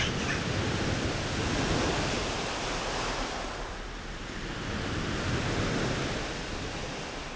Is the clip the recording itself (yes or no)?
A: yes